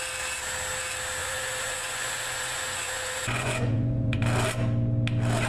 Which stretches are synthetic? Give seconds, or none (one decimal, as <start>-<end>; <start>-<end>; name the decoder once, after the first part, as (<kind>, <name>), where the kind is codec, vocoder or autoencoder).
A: 1.2-4.2 (vocoder, Vocos)